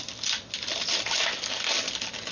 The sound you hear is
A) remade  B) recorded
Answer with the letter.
B